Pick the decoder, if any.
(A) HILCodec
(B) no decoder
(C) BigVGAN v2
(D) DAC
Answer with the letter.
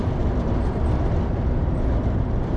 C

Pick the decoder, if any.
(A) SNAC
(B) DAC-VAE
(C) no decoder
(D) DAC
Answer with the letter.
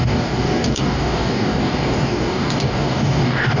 D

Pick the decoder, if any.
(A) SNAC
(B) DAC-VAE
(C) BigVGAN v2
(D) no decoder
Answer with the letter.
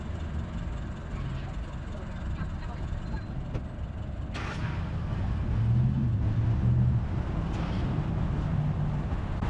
D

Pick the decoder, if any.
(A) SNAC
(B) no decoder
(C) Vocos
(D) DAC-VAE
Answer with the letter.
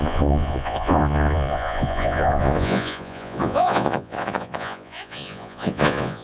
C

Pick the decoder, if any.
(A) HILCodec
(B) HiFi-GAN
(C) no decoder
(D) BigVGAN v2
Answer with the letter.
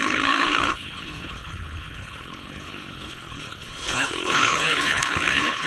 A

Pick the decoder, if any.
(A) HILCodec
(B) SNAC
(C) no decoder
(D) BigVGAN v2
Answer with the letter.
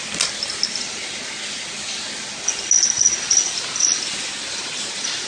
C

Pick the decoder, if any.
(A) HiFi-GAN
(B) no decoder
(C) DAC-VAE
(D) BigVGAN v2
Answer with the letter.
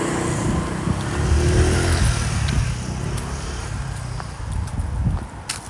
B